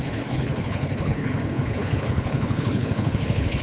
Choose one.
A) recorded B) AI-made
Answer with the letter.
B